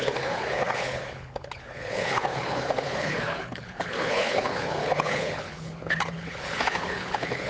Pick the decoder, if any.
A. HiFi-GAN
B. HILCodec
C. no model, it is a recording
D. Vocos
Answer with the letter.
B